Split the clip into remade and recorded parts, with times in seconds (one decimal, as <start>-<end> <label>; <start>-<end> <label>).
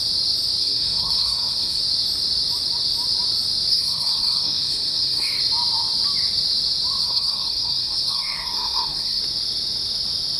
0.0-0.6 recorded; 0.6-1.8 remade; 1.8-3.7 recorded; 3.7-5.4 remade; 5.4-7.0 recorded; 7.0-9.2 remade; 9.2-10.4 recorded